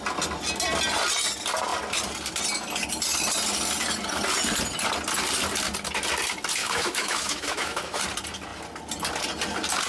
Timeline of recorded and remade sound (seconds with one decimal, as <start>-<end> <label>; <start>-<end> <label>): 0.0-6.6 recorded; 6.6-8.0 remade; 8.0-9.9 recorded